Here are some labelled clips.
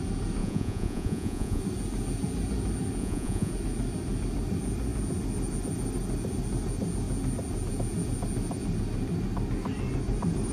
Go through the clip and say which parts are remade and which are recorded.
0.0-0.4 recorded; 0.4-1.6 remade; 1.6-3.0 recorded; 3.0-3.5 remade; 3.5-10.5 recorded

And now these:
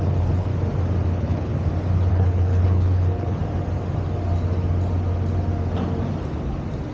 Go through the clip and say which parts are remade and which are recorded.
0.0-0.5 remade; 0.5-1.1 recorded; 1.1-1.5 remade; 1.5-2.1 recorded; 2.1-3.4 remade; 3.4-6.9 recorded